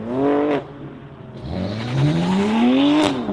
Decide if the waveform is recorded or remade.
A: recorded